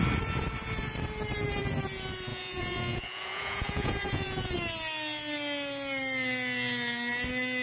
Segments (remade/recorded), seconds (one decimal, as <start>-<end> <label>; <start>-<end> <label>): 0.0-2.3 recorded; 2.3-4.5 remade; 4.5-7.6 recorded